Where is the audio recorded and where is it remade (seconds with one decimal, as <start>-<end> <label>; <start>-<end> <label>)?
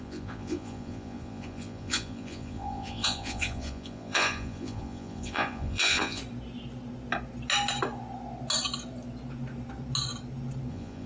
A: 0.0-6.2 remade; 6.2-10.7 recorded; 10.7-11.1 remade